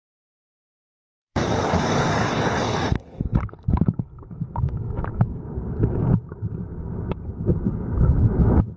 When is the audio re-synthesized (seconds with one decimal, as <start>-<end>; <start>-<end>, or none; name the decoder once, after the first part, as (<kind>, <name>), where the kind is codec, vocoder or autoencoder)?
0.7-5.5 (codec, DAC)